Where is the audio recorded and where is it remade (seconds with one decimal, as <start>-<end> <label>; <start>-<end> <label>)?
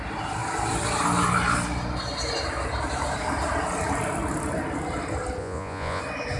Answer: 0.0-5.4 recorded; 5.4-6.0 remade; 6.0-6.4 recorded